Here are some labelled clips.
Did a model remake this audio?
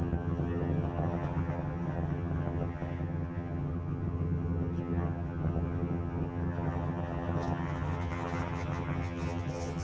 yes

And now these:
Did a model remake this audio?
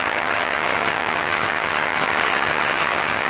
yes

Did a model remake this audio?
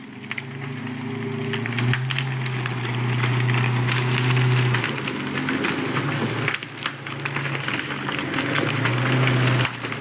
no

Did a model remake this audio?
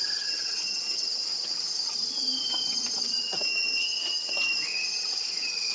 yes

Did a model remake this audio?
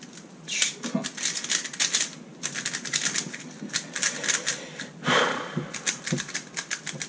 no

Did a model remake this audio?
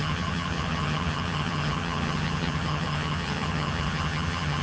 yes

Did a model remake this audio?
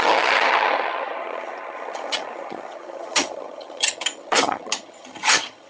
yes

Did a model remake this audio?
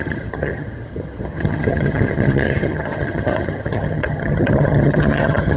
yes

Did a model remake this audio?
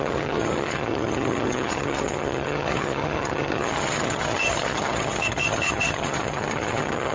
yes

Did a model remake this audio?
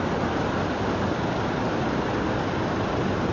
no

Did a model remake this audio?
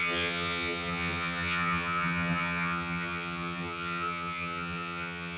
yes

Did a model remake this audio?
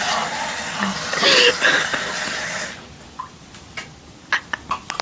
no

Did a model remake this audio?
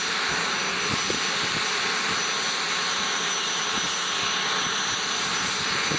no